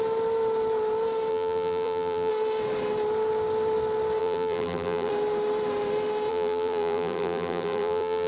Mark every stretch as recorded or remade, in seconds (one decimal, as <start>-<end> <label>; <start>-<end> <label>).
0.0-1.3 recorded; 1.3-2.3 remade; 2.3-4.2 recorded; 4.2-5.1 remade; 5.1-6.3 recorded; 6.3-8.3 remade